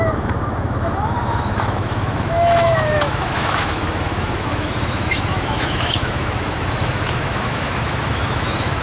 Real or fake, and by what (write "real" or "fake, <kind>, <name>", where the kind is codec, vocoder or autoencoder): fake, autoencoder, DAC-VAE